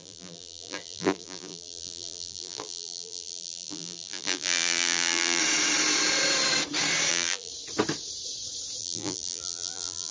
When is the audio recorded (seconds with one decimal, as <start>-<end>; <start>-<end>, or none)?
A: 5.4-7.1; 7.5-8.8